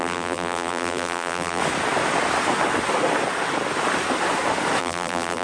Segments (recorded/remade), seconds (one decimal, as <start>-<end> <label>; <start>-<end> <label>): 0.0-1.6 remade; 1.6-4.8 recorded; 4.8-5.4 remade